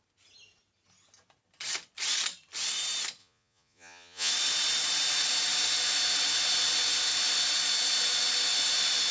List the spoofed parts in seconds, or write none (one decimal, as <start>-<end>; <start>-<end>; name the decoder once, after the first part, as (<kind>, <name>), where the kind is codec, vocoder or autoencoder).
3.2-4.3 (vocoder, Vocos)